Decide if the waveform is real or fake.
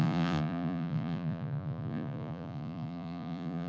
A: fake